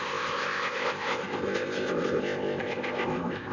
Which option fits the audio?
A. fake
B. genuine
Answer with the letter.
A